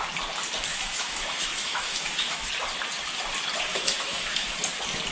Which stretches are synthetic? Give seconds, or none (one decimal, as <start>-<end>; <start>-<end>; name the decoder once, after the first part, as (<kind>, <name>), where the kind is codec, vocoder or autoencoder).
0.7-2.5 (autoencoder, DAC-VAE); 3.7-4.5